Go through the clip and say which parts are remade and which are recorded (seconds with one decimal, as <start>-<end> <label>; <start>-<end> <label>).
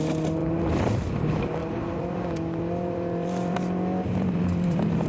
0.0-0.4 recorded; 0.4-1.2 remade; 1.2-1.6 recorded; 1.6-5.1 remade